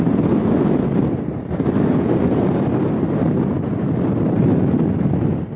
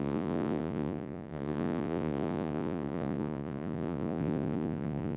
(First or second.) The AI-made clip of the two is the second